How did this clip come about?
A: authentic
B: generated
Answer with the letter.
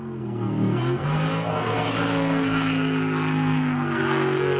B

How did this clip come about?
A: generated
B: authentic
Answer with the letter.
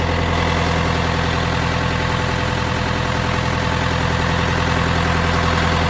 B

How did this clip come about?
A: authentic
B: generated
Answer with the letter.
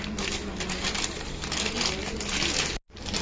A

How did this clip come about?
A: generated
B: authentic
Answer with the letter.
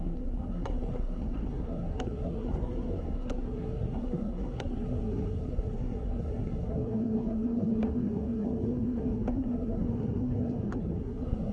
A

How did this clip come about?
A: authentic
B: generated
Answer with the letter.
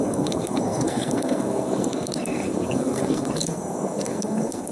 B